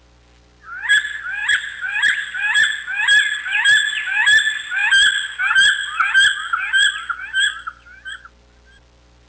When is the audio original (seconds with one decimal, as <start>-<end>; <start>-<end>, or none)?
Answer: 0.0-1.4; 2.7-9.3